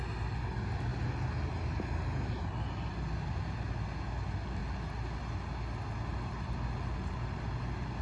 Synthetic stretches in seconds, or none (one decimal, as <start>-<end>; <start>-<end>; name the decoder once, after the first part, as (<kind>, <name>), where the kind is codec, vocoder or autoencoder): none